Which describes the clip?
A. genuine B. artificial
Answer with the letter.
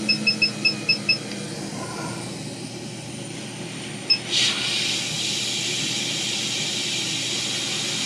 A